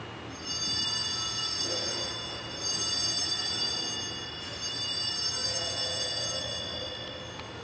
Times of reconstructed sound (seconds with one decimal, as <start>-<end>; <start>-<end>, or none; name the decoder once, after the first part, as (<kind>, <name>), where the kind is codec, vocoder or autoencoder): 1.0-2.1 (vocoder, Vocos); 5.4-6.3